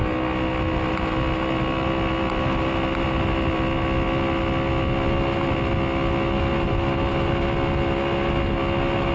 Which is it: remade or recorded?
recorded